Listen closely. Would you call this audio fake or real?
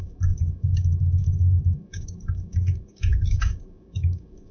fake